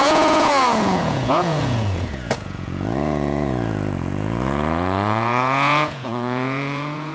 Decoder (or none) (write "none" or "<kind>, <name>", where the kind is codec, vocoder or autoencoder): vocoder, Vocos